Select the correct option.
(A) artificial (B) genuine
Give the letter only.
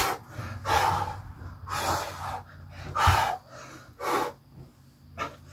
B